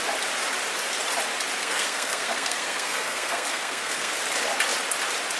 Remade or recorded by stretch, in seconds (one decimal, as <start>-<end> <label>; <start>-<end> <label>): 0.0-1.6 recorded; 1.6-4.1 remade; 4.1-5.4 recorded